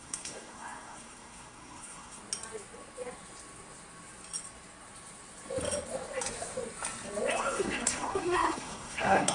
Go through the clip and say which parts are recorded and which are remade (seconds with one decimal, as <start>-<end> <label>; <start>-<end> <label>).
0.0-2.2 remade; 2.2-7.3 recorded; 7.3-9.3 remade